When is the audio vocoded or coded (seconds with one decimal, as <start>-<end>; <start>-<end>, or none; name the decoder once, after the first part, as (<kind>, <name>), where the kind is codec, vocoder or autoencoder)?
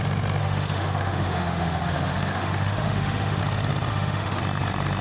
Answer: 0.4-3.4 (autoencoder, DAC-VAE); 3.9-4.4